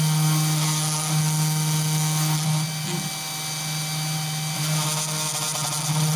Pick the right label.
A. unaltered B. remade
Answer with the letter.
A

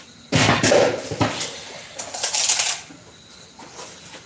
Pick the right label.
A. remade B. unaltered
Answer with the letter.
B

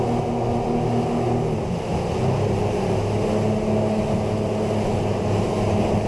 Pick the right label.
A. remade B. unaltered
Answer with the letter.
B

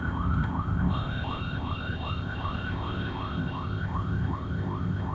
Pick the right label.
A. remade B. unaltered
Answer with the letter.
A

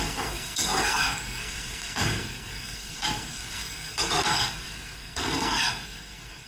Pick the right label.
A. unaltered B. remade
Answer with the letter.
B